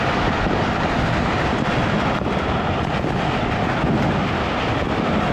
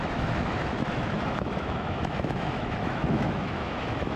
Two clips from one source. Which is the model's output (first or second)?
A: second